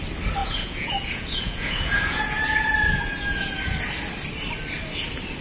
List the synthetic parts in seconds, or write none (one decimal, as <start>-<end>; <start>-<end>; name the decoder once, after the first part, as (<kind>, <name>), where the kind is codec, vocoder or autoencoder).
0.4-3.6 (vocoder, Vocos)